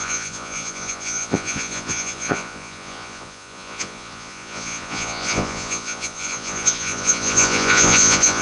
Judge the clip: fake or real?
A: fake